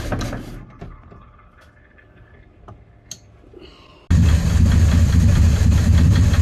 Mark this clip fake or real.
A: real